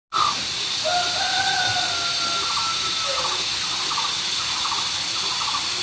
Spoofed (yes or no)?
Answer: no